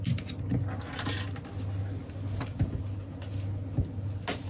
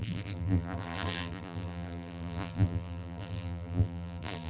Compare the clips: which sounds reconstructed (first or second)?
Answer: second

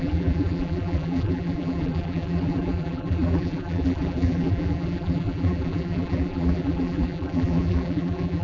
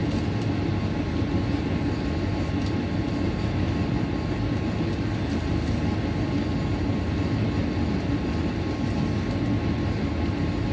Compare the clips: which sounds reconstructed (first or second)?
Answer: first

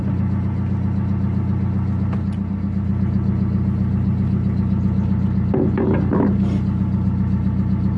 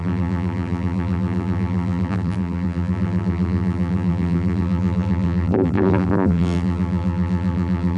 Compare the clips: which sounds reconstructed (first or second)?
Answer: second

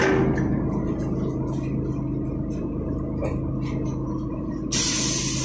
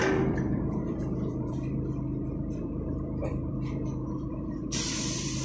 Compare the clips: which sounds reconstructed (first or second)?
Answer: second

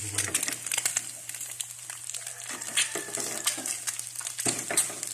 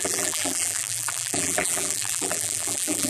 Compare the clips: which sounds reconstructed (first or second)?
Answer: second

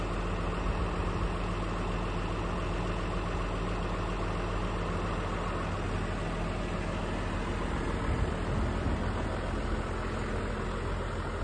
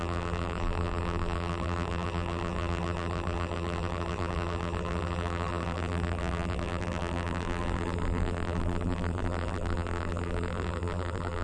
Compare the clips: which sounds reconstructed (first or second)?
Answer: second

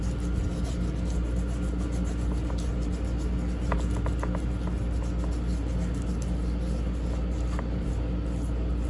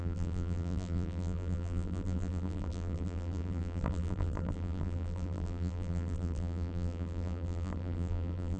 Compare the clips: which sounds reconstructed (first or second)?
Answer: second